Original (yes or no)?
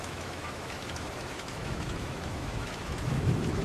no